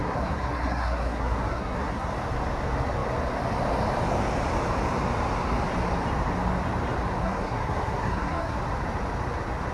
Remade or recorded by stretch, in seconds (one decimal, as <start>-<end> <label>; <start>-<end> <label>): 0.0-2.1 remade; 2.1-7.2 recorded; 7.2-8.6 remade; 8.6-9.7 recorded